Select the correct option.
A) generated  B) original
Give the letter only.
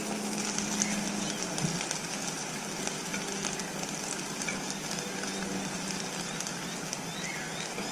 B